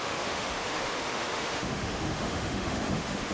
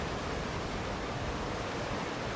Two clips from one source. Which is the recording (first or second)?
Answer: second